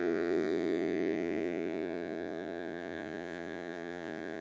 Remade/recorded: remade